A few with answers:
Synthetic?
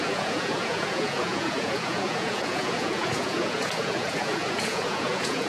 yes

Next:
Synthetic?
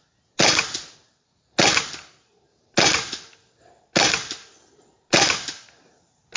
no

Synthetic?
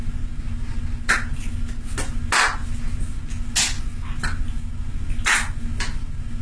no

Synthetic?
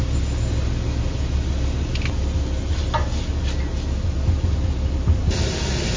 no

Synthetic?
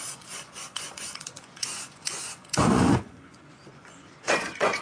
yes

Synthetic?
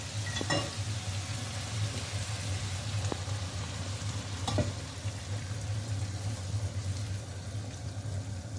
no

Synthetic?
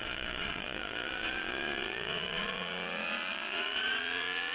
yes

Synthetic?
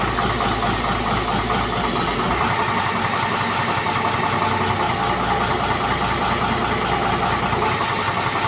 no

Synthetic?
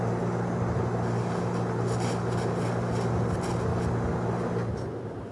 no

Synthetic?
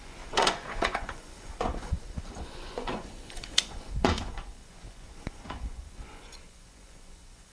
yes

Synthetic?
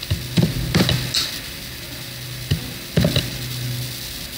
no